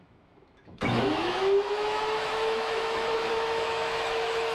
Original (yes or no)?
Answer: no